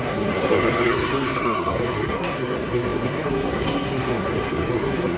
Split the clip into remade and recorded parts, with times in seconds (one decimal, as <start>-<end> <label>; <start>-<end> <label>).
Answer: 0.0-5.2 remade